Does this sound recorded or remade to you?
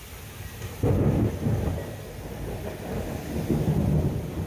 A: recorded